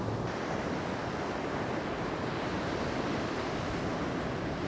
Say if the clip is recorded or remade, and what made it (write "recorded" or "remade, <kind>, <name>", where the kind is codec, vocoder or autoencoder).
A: recorded